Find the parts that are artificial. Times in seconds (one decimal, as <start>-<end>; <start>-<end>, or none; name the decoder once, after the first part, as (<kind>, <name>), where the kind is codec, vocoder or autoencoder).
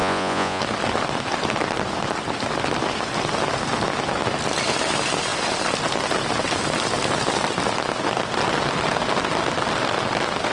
0.0-0.6 (vocoder, Vocos)